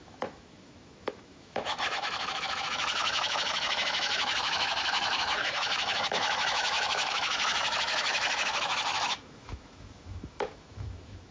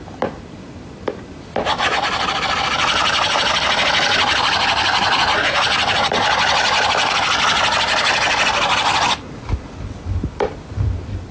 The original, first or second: second